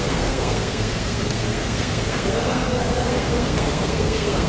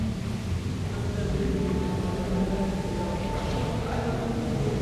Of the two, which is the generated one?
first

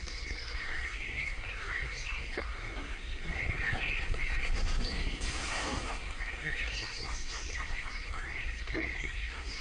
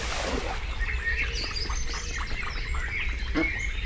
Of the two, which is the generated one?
first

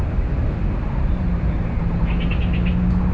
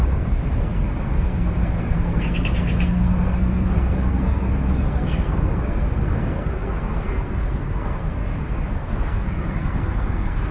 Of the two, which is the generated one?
second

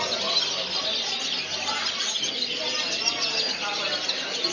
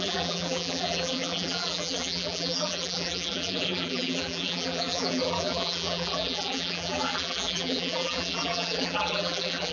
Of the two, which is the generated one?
second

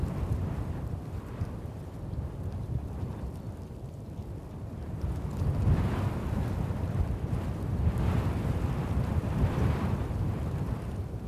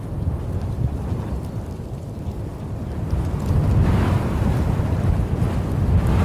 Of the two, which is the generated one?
first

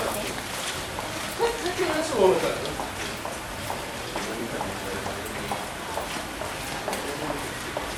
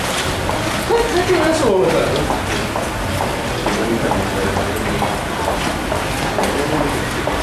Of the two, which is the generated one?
first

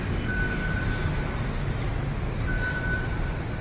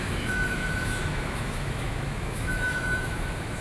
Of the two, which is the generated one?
second